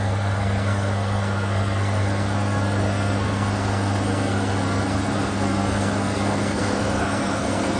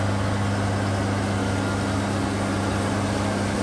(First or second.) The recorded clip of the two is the second